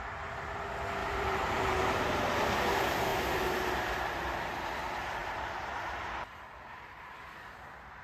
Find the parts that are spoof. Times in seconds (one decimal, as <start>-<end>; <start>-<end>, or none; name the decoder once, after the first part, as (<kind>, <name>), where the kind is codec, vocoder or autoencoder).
1.0-2.6 (vocoder, BigVGAN v2); 3.1-4.0; 5.2-5.7